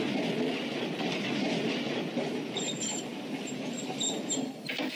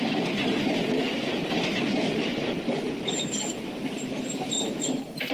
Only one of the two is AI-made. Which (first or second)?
second